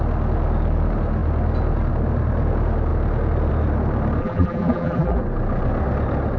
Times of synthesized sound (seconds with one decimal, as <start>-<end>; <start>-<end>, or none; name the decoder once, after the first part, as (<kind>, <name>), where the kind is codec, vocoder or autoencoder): 4.2-5.2 (vocoder, BigVGAN v2)